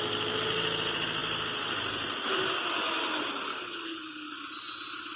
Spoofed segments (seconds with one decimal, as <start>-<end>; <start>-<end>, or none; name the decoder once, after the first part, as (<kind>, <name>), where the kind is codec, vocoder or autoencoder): 3.5-4.3 (codec, HILCodec)